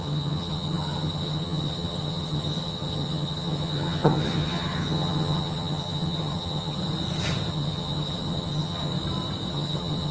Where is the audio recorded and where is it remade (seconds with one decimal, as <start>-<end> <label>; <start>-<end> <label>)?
0.0-6.8 remade; 6.8-7.5 recorded; 7.5-8.9 remade; 8.9-9.5 recorded; 9.5-10.1 remade